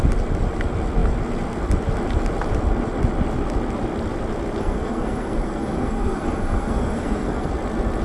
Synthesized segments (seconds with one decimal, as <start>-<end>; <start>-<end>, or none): 4.6-7.5